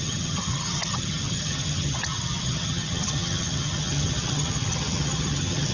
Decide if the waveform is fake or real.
fake